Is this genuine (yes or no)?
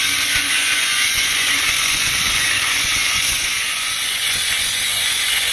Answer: no